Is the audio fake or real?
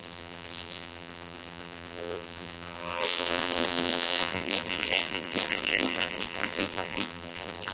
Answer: fake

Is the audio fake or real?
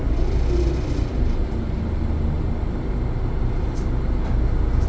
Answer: real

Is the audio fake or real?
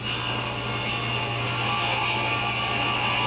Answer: real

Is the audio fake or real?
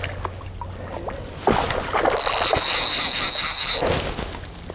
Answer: real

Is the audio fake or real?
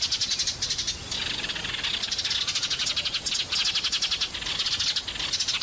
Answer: real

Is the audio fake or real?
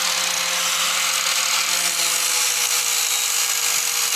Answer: real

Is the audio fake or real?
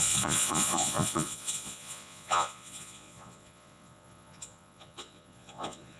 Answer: fake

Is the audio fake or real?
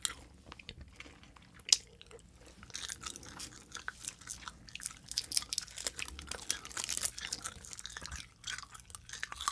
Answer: real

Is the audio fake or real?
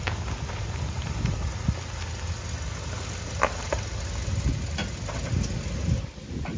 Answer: real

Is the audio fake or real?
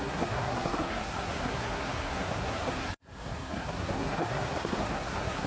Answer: fake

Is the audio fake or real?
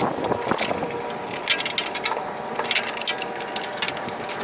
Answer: real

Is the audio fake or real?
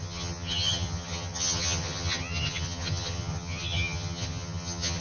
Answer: fake